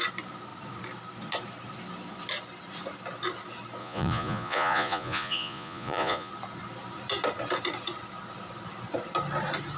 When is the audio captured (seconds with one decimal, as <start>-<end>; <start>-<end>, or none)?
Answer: 0.0-3.8; 6.3-9.8